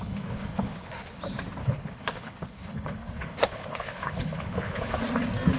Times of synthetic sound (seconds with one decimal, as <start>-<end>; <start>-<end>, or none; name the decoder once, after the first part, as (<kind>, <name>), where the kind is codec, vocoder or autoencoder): 0.0-1.2 (codec, HILCodec); 1.6-5.0